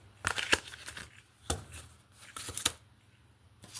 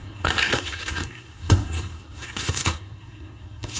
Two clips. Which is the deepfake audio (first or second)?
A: second